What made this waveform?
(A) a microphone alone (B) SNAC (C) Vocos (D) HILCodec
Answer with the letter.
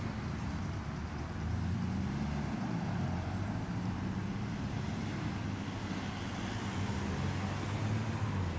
A